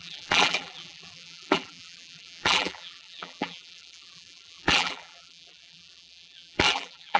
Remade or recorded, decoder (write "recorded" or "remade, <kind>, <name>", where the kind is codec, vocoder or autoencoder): remade, vocoder, BigVGAN v2